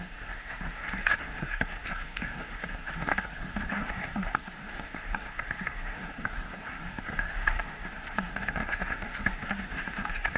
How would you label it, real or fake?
fake